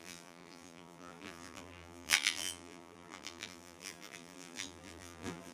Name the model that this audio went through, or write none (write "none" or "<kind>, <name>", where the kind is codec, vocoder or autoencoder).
vocoder, BigVGAN v2